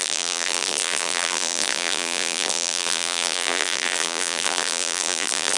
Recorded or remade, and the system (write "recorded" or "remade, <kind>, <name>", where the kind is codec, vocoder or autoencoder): remade, vocoder, BigVGAN v2